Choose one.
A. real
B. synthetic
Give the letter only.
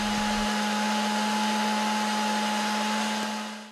A